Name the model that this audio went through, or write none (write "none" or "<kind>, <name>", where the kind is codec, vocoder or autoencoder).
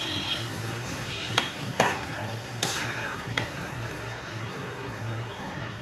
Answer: codec, SNAC